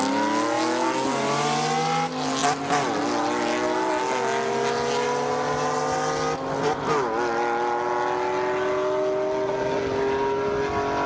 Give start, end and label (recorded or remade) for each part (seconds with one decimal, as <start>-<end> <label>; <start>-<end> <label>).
0.0-11.1 recorded